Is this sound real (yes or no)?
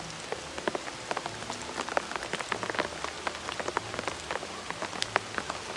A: yes